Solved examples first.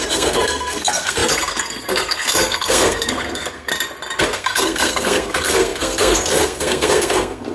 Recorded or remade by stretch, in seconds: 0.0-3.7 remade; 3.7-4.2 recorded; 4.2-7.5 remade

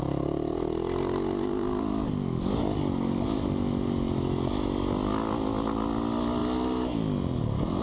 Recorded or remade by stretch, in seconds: 0.0-7.8 recorded

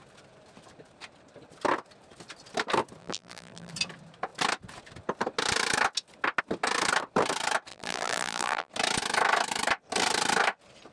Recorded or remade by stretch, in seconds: 0.0-3.0 recorded; 3.0-3.7 remade; 3.7-7.7 recorded; 7.7-8.7 remade; 8.7-10.9 recorded

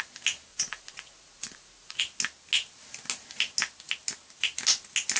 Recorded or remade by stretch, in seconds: 0.0-0.5 recorded; 0.5-2.0 remade; 2.0-5.2 recorded

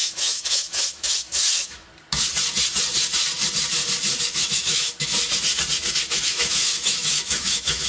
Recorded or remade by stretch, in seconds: 0.0-1.9 remade; 1.9-4.2 recorded; 4.2-5.1 remade; 5.1-6.0 recorded; 6.0-7.9 remade